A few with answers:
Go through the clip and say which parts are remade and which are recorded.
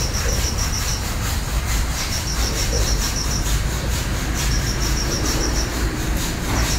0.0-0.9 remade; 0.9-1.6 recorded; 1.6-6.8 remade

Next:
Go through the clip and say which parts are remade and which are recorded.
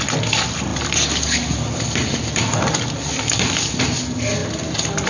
0.0-0.7 recorded; 0.7-3.8 remade; 3.8-4.4 recorded; 4.4-5.1 remade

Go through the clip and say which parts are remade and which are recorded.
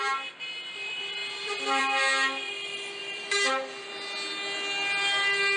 0.0-3.0 recorded; 3.0-3.9 remade; 3.9-5.6 recorded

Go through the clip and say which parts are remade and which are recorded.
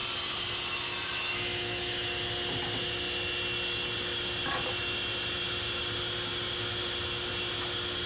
0.0-8.1 recorded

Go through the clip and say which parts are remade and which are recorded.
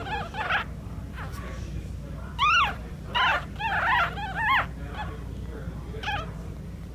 0.0-3.3 remade; 3.3-6.4 recorded; 6.4-6.9 remade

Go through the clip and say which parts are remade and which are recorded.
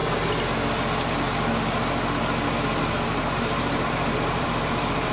0.0-2.8 recorded; 2.8-5.1 remade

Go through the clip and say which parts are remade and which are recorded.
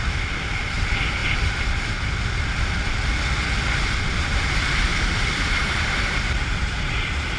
0.0-1.2 remade; 1.2-3.8 recorded; 3.8-7.4 remade